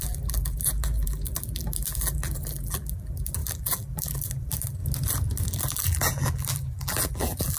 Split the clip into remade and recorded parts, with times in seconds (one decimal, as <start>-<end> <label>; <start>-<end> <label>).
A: 0.0-4.8 remade; 4.8-5.6 recorded; 5.6-7.6 remade